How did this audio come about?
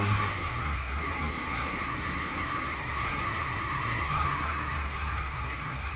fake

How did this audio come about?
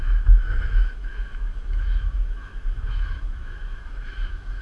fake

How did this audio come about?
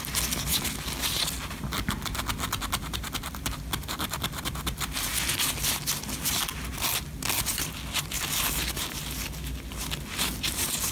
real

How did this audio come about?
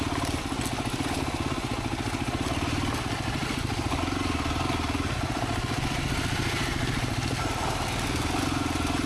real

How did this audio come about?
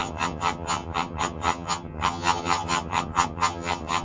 fake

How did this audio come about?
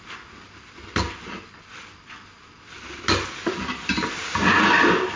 real